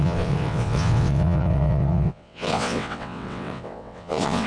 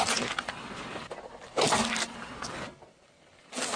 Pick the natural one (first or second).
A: second